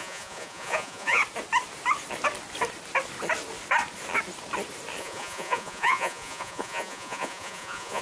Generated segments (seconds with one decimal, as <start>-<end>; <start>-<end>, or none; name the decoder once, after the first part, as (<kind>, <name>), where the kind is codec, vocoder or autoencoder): 0.0-1.2 (vocoder, Vocos); 5.0-8.0